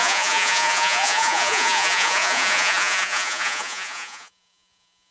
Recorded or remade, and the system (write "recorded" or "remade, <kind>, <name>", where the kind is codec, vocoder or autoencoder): remade, vocoder, Vocos